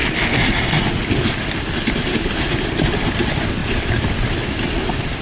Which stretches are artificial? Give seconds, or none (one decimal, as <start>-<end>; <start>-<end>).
0.0-3.1; 3.6-4.1